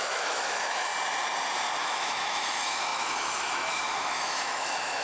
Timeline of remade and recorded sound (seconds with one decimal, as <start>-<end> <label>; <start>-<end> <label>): 0.0-0.9 remade; 0.9-1.8 recorded; 1.8-5.0 remade